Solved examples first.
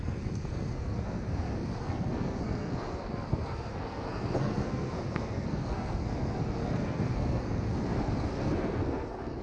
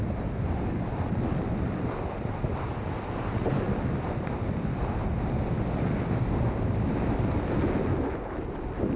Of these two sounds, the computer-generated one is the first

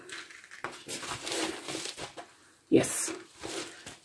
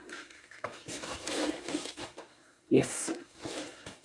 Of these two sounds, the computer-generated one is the second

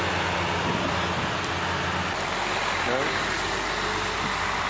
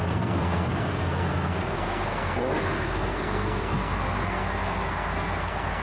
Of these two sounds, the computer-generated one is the second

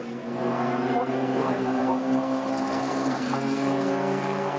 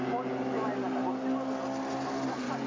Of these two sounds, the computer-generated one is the first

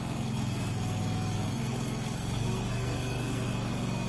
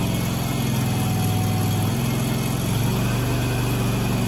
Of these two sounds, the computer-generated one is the first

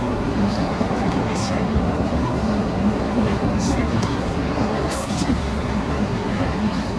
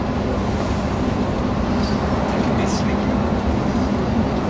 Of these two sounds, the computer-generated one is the first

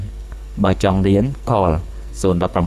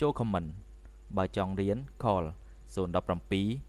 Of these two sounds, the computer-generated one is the first